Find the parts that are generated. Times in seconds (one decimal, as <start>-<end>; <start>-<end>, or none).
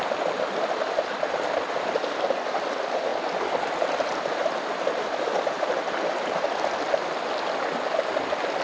none